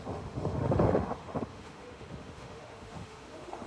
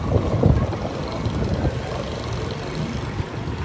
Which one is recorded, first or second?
second